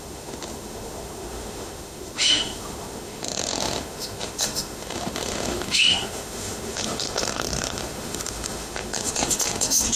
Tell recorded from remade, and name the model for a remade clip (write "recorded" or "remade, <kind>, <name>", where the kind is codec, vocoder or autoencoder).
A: remade, autoencoder, DAC-VAE